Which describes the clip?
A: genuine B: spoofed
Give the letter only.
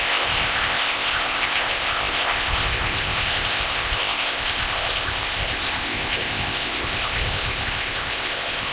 B